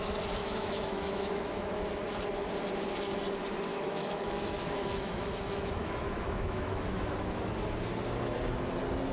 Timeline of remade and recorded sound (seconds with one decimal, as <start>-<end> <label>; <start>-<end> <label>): 0.0-0.4 recorded; 0.4-1.8 remade; 1.8-3.7 recorded; 3.7-7.4 remade; 7.4-9.1 recorded